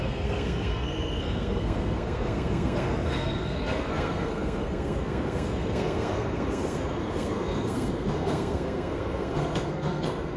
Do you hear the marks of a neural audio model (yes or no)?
yes